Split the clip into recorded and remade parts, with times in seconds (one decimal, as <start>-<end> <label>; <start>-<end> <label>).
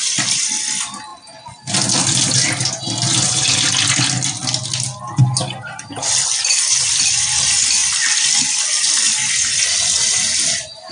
0.0-10.9 recorded